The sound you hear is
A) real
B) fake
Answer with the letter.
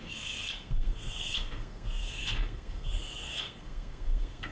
B